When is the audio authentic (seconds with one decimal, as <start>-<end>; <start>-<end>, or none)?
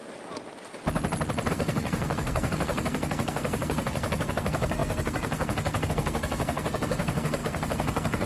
0.0-1.5